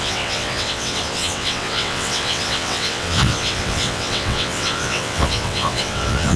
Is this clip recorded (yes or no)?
no